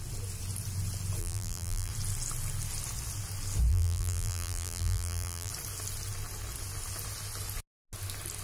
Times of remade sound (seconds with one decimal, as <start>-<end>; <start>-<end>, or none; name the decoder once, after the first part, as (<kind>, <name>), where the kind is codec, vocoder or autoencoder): 1.2-1.9 (vocoder, BigVGAN v2); 3.7-5.5